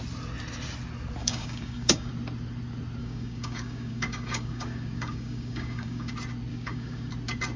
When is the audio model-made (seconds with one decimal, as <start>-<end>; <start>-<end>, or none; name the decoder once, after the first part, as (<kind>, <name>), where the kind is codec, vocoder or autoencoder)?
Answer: 1.2-2.1 (codec, DAC); 3.0-6.1; 6.5-7.1